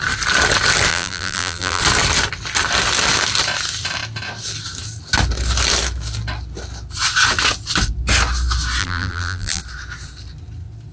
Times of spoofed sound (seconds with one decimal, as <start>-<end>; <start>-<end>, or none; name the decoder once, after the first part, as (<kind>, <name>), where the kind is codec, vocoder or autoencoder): 0.9-1.8 (vocoder, BigVGAN v2); 8.8-9.6